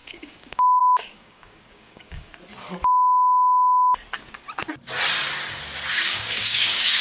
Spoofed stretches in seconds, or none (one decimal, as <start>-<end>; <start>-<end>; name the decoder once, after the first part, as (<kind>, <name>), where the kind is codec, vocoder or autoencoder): 0.0-2.3 (codec, DAC); 5.9-7.0